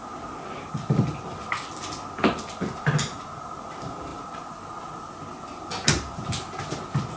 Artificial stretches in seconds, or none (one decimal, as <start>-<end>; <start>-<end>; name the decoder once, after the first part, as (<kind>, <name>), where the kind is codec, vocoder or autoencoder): 4.1-5.2 (vocoder, BigVGAN v2)